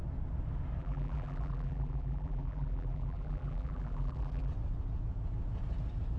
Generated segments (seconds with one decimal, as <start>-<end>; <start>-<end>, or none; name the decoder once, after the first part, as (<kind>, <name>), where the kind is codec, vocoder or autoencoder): 0.8-4.5 (vocoder, BigVGAN v2)